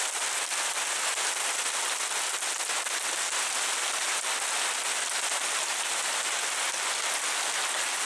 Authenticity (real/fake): real